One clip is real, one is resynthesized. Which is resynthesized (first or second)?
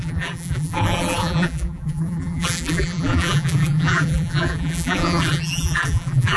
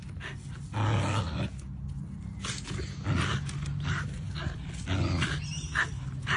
first